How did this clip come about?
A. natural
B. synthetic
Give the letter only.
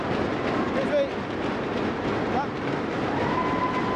A